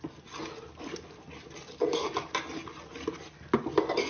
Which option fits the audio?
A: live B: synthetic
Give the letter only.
A